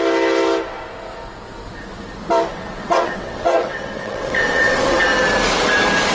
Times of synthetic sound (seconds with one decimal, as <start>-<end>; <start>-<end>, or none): 2.5-5.0

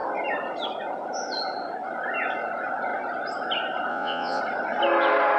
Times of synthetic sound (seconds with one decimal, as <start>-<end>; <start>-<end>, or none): 3.9-4.4

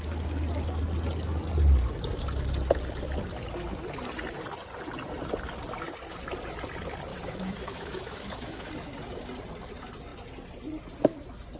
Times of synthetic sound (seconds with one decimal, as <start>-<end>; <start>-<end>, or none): 7.1-8.7

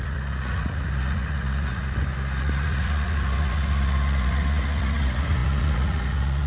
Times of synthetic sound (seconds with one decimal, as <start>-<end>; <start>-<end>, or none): 0.0-1.8; 2.4-6.5

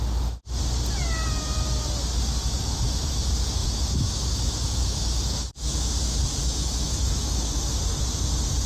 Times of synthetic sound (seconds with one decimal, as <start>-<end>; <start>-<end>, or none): 2.4-3.2; 3.6-5.9; 6.4-7.7